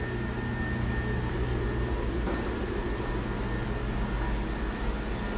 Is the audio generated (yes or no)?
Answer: no